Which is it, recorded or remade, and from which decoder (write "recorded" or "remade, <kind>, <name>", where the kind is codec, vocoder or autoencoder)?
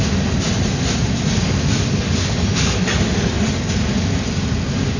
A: recorded